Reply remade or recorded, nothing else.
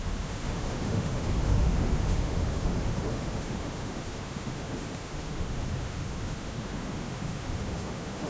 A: remade